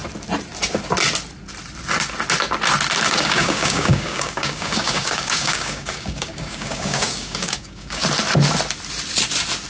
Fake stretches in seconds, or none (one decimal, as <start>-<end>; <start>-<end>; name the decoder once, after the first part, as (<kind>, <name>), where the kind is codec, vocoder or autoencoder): 3.1-8.0 (codec, DAC)